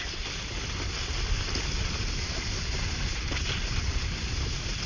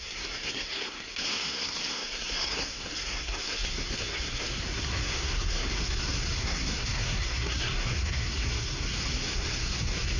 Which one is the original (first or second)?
first